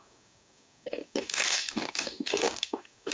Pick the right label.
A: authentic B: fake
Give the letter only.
B